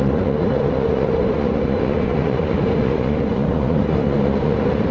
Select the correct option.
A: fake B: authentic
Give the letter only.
A